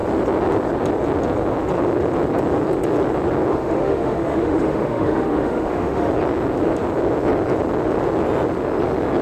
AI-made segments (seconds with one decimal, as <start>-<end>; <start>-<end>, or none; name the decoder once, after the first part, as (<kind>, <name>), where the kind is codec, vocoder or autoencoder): 3.5-6.1 (autoencoder, DAC-VAE)